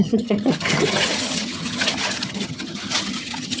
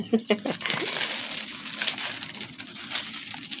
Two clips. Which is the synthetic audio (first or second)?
first